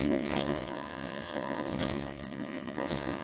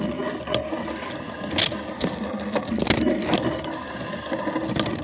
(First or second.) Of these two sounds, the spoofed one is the first